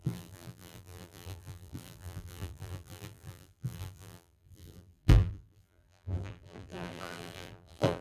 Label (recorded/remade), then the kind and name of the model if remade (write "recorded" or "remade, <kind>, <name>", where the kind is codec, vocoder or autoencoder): remade, vocoder, BigVGAN v2